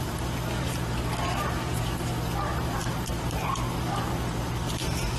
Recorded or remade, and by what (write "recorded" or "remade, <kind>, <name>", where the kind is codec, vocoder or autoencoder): remade, vocoder, BigVGAN v2